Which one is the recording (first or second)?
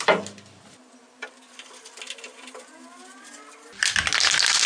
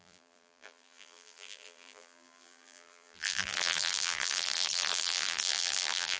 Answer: first